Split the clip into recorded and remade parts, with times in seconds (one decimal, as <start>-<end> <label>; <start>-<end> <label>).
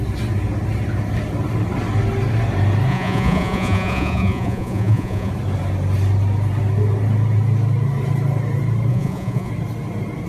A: 0.0-2.9 recorded; 2.9-5.3 remade; 5.3-8.9 recorded; 8.9-9.5 remade; 9.5-10.3 recorded